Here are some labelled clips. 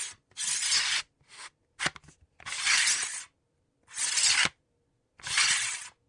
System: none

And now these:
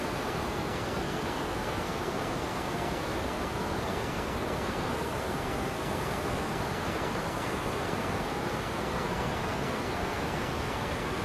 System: codec, SNAC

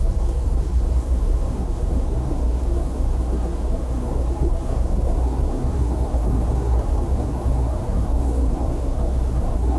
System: codec, SNAC